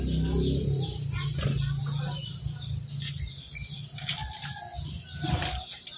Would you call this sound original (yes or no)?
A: yes